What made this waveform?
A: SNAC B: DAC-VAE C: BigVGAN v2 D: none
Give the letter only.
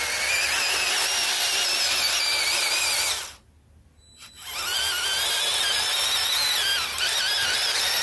D